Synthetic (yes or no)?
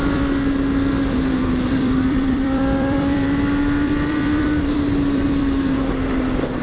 yes